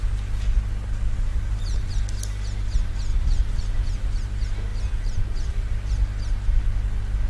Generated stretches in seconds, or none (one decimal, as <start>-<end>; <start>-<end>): 1.3-1.9; 3.1-4.3; 4.7-5.9